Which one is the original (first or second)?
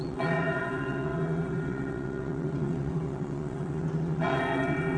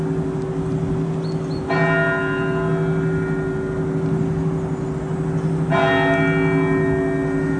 second